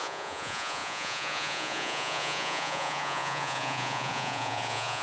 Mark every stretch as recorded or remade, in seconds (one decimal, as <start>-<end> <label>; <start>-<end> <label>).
0.0-5.0 remade